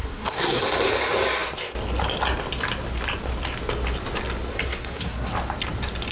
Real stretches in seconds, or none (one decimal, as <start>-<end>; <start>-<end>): 0.6-4.5; 5.3-6.1

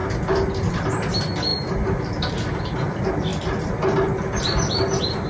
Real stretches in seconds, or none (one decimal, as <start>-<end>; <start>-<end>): 0.0-5.3

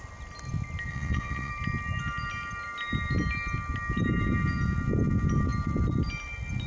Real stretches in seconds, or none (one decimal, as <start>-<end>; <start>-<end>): 0.0-0.9; 1.5-6.7

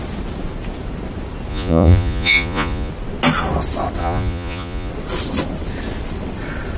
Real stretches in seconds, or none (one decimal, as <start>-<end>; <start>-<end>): 0.0-1.5; 2.9-4.0; 4.9-6.8

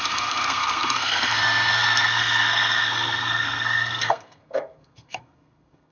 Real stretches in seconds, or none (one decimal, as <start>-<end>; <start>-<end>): none